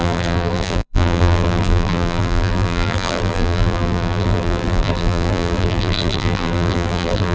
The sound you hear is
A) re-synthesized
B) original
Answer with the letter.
A